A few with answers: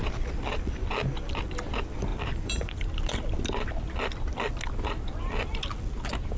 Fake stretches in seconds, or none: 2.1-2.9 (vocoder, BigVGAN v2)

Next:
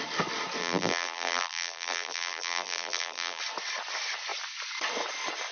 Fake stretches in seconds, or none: 0.6-3.4 (vocoder, BigVGAN v2)

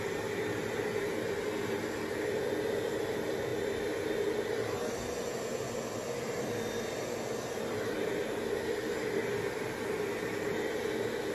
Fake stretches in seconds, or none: none

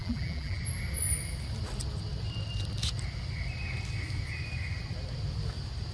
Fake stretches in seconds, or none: 0.0-0.6 (vocoder, BigVGAN v2)

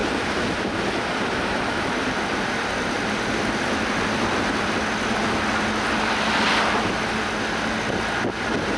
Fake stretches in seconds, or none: none